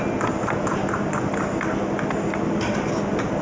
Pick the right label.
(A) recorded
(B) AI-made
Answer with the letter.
A